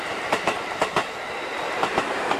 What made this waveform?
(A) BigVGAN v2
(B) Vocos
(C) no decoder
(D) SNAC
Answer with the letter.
A